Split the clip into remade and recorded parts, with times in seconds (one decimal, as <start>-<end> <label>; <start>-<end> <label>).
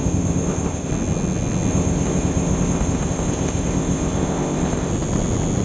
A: 0.0-0.9 remade; 0.9-1.7 recorded; 1.7-4.9 remade; 4.9-5.6 recorded